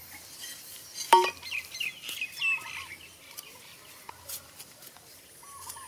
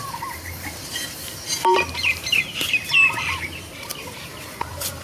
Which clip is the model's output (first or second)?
second